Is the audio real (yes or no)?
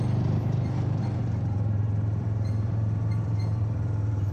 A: no